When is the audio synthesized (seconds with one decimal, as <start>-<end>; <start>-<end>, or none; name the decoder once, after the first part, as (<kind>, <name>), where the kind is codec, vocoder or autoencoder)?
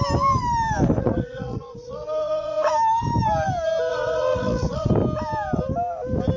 1.0-2.7 (vocoder, WaveNeXt); 3.9-4.9